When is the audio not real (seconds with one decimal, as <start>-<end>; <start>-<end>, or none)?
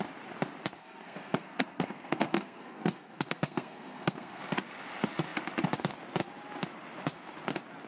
0.8-4.4